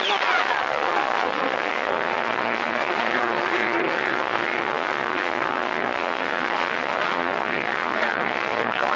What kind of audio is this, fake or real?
fake